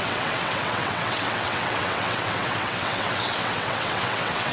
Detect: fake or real fake